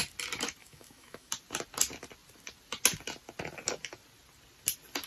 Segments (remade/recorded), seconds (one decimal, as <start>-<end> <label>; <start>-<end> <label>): 0.0-0.6 recorded; 0.6-1.3 remade; 1.3-5.1 recorded